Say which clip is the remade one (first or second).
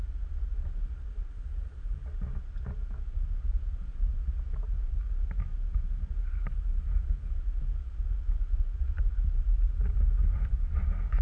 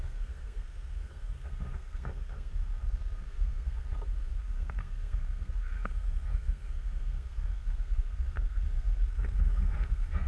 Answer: second